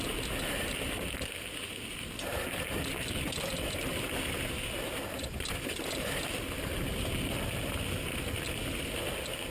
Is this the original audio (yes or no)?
yes